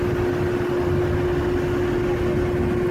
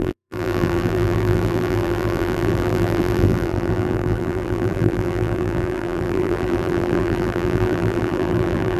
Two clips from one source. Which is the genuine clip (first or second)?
first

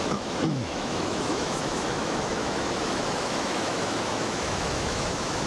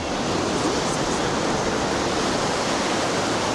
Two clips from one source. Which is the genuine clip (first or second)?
second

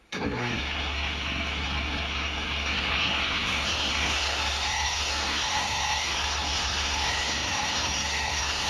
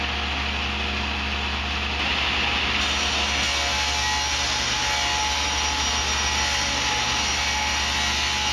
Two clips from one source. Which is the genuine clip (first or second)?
second